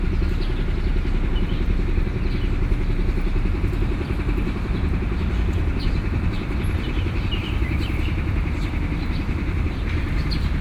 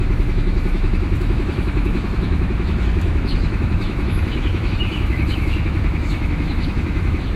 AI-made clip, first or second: second